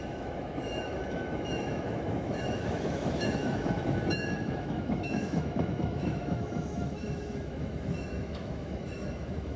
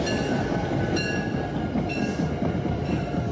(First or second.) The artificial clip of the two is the first